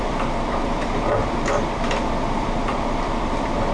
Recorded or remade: remade